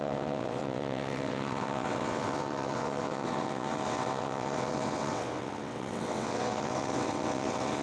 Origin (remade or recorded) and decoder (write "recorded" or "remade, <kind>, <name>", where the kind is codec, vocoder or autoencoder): remade, vocoder, WaveNeXt